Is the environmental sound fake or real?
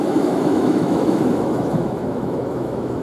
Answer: fake